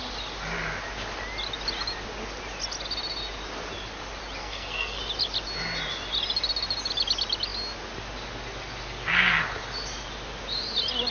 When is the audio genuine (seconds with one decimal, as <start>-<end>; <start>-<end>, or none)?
0.0-4.4; 5.0-11.1